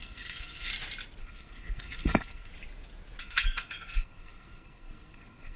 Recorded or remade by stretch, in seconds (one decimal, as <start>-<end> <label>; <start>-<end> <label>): 0.0-0.7 remade; 0.7-1.2 recorded; 1.2-2.5 remade; 2.5-3.2 recorded; 3.2-5.6 remade